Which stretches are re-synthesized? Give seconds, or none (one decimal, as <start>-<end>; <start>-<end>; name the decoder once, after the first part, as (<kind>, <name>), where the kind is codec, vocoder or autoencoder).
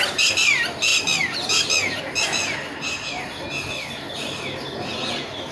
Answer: 4.9-5.5 (vocoder, BigVGAN v2)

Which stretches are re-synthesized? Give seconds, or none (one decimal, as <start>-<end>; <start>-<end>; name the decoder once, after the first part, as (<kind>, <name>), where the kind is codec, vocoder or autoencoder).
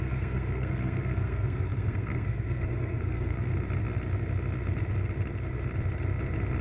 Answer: 0.0-3.5 (codec, SNAC)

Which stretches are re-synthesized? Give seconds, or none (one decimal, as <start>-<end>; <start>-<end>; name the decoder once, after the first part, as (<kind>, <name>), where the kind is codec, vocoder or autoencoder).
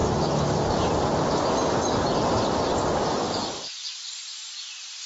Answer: none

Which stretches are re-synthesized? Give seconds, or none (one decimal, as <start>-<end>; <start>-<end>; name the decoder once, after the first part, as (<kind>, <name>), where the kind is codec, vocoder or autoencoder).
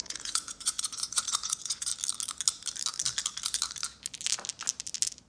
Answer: 0.0-1.9 (vocoder, Vocos)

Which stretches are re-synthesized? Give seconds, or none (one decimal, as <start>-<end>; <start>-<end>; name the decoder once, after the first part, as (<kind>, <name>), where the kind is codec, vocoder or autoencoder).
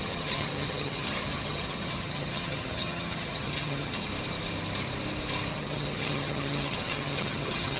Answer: 0.0-4.1 (vocoder, HiFi-GAN); 5.5-7.8